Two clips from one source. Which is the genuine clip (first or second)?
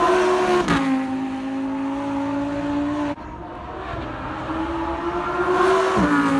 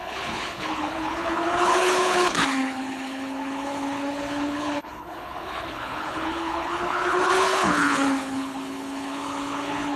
first